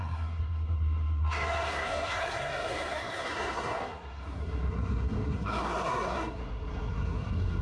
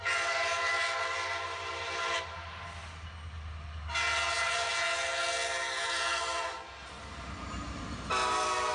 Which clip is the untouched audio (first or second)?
second